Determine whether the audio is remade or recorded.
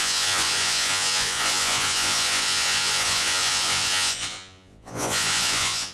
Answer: remade